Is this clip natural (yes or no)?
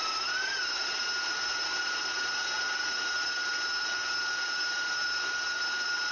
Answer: yes